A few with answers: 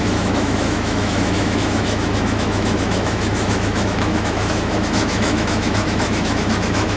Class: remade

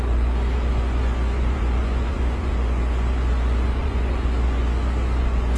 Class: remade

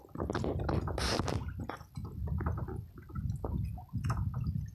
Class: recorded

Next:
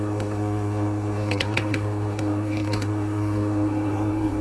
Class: remade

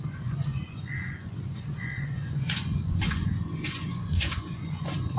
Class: remade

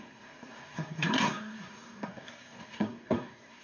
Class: remade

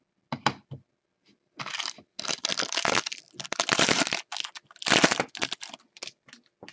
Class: recorded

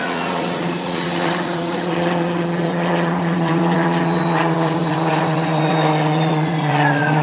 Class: remade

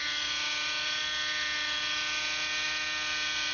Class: recorded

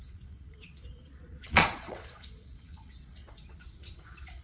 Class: remade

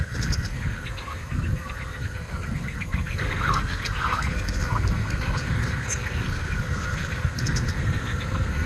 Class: remade